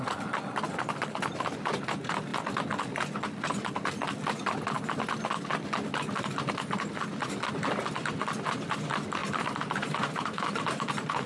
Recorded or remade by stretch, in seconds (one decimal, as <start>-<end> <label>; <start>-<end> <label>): 0.0-9.2 recorded; 9.2-10.9 remade; 10.9-11.3 recorded